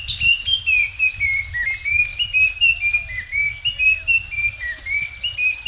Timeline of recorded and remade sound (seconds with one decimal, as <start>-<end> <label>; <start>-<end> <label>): 0.0-5.7 recorded